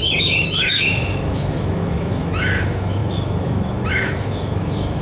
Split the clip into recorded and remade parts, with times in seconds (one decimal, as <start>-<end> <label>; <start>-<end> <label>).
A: 0.0-5.0 remade